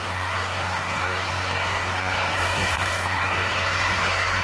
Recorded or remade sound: remade